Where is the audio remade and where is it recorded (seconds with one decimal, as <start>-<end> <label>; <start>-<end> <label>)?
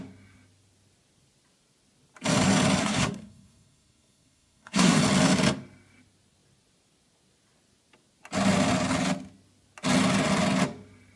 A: 0.0-2.8 recorded; 2.8-5.0 remade; 5.0-11.2 recorded